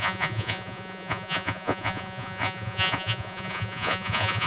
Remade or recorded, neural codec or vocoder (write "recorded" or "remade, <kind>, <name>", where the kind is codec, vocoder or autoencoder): remade, vocoder, Vocos